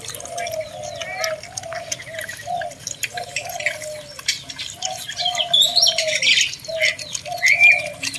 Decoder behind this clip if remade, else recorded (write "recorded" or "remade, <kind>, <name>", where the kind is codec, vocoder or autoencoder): recorded